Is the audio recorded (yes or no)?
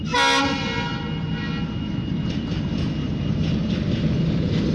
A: yes